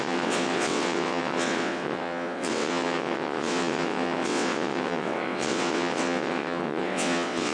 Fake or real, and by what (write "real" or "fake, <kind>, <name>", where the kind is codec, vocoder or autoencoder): fake, vocoder, WaveNeXt